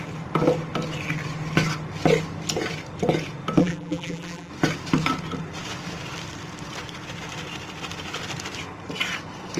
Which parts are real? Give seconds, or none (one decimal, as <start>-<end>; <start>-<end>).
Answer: 0.0-3.6; 4.5-9.6